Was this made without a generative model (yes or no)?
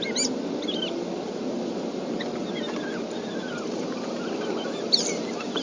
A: yes